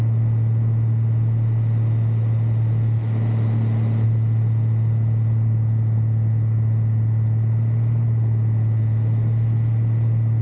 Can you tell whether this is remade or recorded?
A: recorded